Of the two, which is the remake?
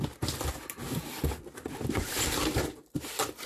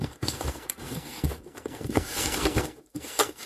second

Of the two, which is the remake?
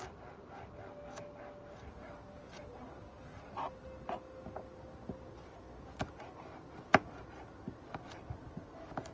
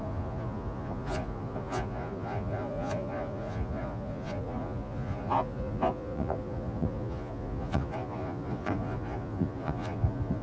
second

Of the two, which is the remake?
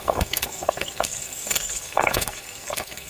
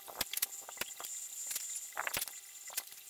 first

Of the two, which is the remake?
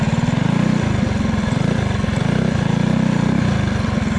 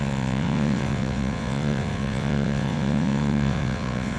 second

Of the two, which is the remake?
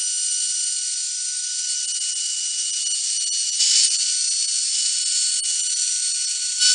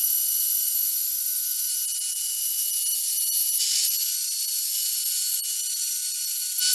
second